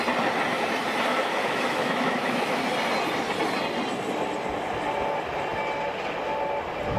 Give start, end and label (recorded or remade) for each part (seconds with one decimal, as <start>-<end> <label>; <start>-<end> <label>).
0.0-1.1 recorded; 1.1-2.6 remade; 2.6-7.0 recorded